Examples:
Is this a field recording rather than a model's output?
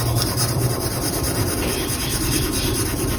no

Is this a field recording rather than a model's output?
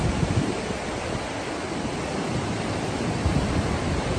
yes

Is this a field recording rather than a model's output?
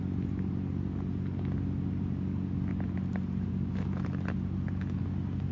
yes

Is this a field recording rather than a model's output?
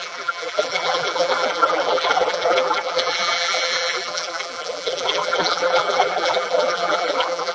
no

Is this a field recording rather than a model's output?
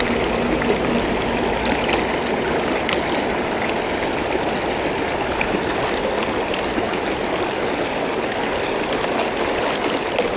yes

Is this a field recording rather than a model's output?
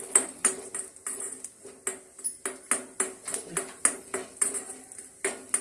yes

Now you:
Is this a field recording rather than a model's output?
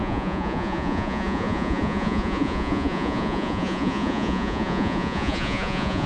no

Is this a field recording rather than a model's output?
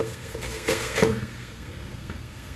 no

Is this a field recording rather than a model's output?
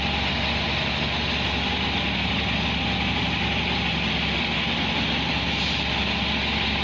yes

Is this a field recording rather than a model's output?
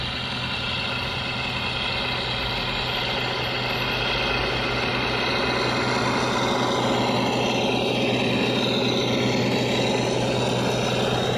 yes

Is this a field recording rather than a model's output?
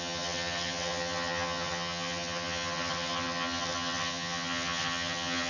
no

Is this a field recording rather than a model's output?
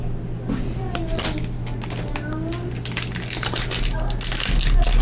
yes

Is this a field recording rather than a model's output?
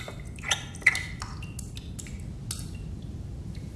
yes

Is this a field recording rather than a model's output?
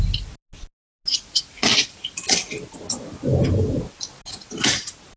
yes